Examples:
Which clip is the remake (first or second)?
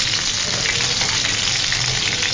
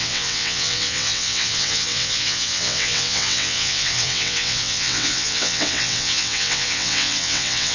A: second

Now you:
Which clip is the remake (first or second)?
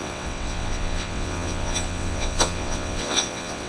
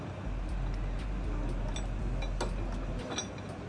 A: first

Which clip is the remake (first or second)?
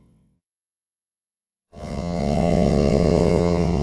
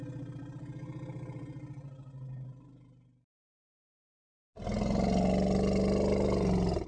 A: first